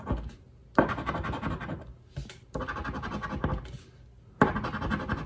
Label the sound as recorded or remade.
recorded